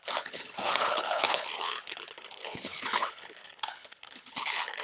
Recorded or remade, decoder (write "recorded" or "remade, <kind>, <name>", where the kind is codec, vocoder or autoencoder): remade, codec, HILCodec